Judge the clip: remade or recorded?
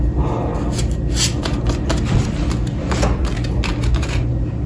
recorded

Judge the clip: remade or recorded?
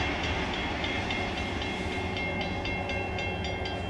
recorded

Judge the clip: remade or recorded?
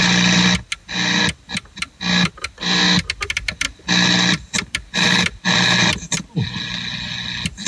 recorded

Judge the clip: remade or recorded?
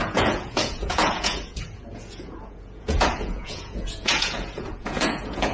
remade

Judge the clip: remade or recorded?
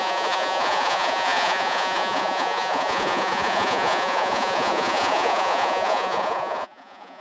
remade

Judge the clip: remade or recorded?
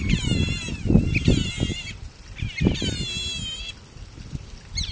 recorded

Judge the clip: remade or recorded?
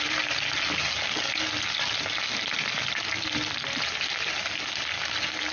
recorded